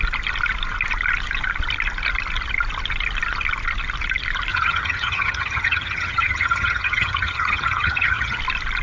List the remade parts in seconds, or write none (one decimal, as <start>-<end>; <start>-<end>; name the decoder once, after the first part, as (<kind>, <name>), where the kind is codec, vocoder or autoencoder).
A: 4.5-8.4 (vocoder, HiFi-GAN)